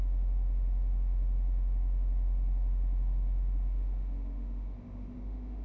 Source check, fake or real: fake